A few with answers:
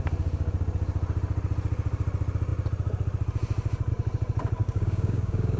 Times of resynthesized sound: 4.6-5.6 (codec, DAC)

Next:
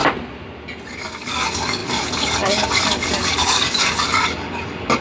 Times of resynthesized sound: 0.9-5.0 (codec, DAC)